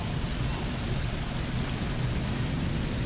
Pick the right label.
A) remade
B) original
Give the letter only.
B